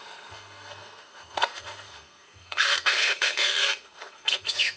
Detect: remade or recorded remade